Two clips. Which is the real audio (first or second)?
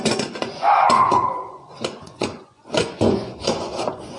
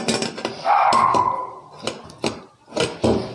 second